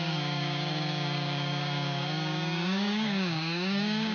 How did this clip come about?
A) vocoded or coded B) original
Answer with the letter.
A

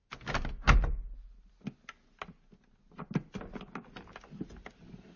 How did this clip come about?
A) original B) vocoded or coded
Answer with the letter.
A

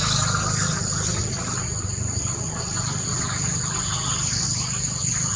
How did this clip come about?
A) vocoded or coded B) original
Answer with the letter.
B